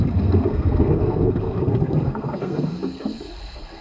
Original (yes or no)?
no